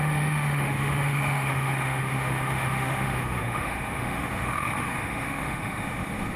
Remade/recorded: remade